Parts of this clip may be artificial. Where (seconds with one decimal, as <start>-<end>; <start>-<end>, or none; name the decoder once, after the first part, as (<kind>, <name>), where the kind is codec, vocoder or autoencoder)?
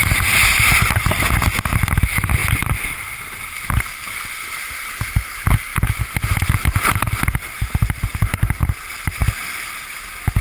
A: none